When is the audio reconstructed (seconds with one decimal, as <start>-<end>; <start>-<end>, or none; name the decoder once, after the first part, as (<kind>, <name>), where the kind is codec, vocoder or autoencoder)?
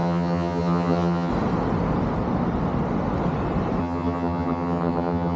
0.0-1.3 (vocoder, HiFi-GAN); 3.8-5.4